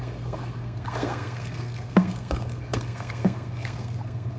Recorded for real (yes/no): no